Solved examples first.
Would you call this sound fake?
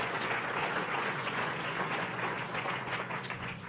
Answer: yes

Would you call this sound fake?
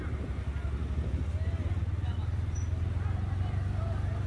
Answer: no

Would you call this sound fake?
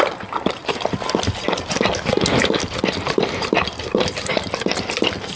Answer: no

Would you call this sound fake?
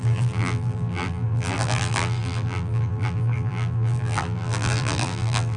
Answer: yes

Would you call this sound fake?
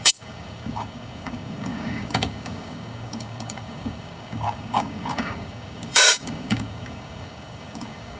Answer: yes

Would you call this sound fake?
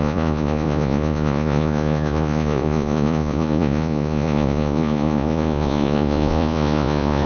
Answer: yes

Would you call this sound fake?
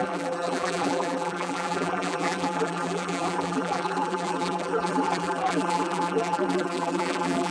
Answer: yes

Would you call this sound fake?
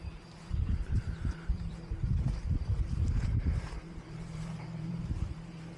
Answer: yes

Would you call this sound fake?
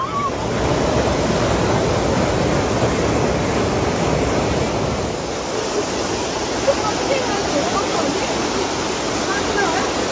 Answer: no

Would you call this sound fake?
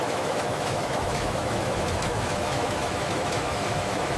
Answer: yes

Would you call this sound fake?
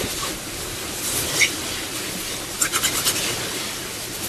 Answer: yes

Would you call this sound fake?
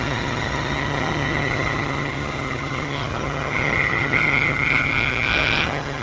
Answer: yes